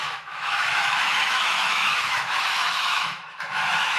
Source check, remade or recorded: remade